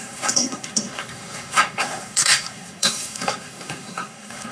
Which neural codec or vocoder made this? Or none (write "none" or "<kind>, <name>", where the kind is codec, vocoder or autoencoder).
codec, SNAC